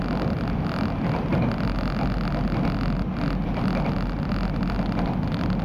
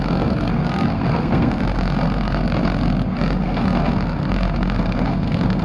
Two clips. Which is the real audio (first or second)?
first